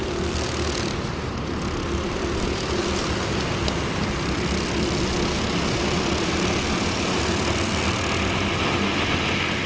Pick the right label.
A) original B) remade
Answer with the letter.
A